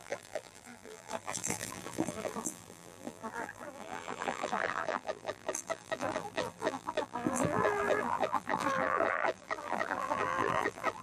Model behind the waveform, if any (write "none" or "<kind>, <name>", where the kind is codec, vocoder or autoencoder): vocoder, BigVGAN v2